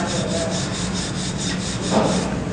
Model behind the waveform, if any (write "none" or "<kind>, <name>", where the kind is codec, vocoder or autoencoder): none